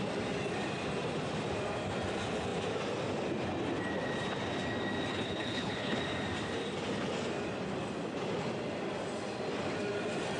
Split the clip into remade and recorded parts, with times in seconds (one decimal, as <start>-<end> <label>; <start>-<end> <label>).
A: 0.0-5.1 recorded; 5.1-6.0 remade; 6.0-10.4 recorded